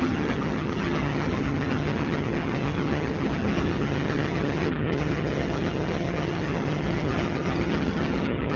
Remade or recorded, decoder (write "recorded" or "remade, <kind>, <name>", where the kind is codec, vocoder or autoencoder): remade, vocoder, HiFi-GAN